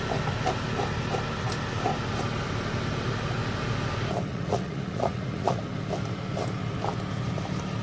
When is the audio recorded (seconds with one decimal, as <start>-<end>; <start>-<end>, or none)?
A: 0.0-4.3; 5.6-7.8